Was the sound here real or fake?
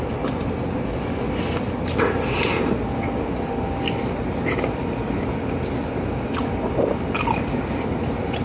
real